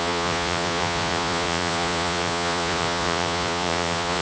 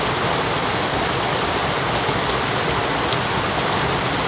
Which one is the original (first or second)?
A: second